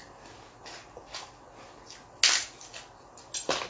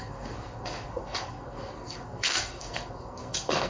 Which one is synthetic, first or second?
second